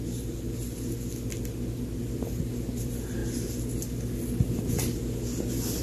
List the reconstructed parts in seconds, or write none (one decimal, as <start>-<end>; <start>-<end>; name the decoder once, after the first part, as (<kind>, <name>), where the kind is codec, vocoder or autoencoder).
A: none